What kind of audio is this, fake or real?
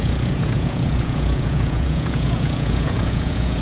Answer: fake